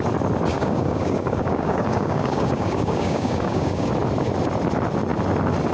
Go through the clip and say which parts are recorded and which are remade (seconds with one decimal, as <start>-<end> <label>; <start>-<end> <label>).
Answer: 0.0-0.5 recorded; 0.5-3.9 remade; 3.9-5.7 recorded

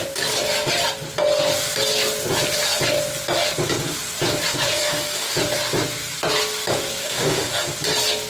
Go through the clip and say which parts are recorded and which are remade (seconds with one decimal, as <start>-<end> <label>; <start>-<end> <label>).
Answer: 0.0-4.7 recorded; 4.7-5.3 remade; 5.3-7.0 recorded; 7.0-7.7 remade; 7.7-8.3 recorded

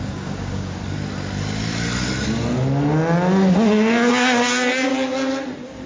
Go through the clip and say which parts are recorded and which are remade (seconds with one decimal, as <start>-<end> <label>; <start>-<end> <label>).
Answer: 0.0-0.8 remade; 0.8-4.1 recorded; 4.1-4.9 remade; 4.9-5.9 recorded